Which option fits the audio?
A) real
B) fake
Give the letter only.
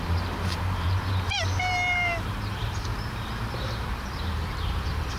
B